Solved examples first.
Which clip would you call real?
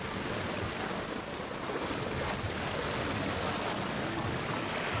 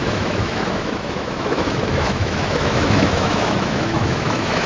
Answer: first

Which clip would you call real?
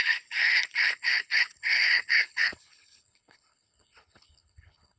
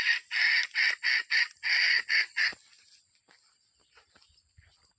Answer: second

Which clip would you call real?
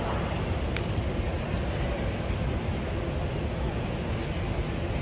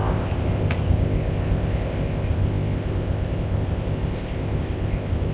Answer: first